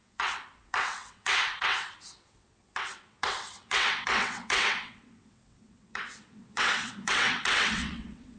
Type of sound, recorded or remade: remade